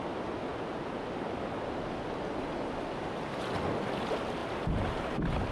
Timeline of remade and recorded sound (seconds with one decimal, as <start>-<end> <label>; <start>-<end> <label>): 0.0-5.5 recorded